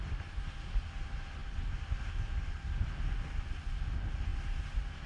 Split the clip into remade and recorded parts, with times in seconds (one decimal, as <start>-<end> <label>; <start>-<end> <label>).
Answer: 0.0-5.1 recorded